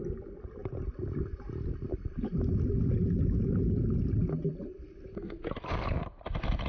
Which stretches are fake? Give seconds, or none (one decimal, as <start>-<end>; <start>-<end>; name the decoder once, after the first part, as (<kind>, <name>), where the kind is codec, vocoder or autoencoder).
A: none